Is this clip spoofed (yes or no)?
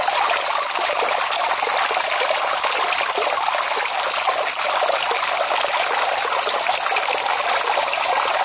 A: no